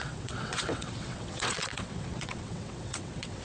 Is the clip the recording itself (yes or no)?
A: no